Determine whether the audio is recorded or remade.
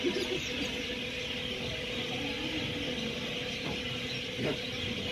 recorded